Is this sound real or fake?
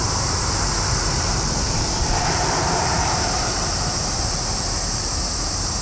fake